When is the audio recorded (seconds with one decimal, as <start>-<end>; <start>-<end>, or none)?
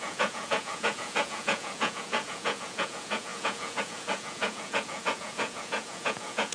none